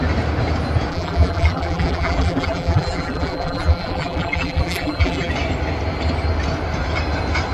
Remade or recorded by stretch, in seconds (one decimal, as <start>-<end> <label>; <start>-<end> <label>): 0.0-0.9 recorded; 0.9-5.3 remade; 5.3-7.5 recorded